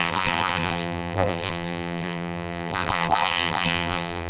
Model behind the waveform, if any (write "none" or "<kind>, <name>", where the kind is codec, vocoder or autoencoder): vocoder, BigVGAN v2